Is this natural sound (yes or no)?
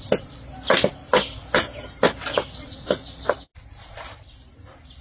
yes